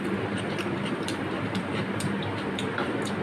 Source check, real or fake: fake